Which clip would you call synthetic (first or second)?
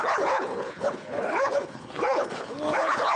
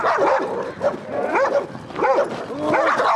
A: first